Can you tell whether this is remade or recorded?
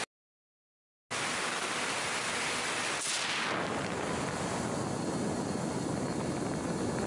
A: recorded